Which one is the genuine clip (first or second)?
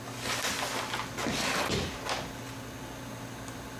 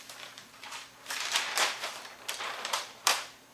first